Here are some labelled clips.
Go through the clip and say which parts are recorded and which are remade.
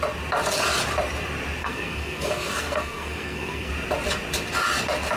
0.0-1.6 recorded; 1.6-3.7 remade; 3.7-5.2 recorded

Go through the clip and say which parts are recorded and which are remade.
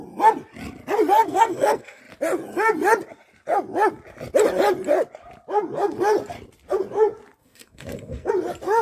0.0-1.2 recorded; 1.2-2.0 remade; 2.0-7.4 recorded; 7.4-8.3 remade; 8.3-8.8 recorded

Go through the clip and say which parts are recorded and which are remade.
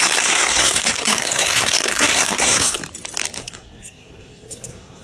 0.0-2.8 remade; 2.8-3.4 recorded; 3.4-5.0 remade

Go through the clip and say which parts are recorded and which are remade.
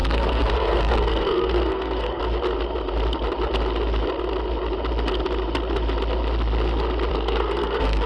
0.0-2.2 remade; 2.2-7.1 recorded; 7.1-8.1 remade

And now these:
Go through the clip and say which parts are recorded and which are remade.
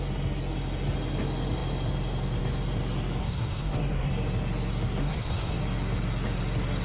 0.0-3.2 recorded; 3.2-4.1 remade; 4.1-5.0 recorded; 5.0-5.6 remade; 5.6-6.8 recorded